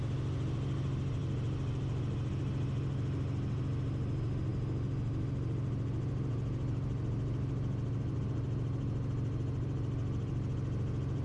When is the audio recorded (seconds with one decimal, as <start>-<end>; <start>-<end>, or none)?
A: 0.0-11.2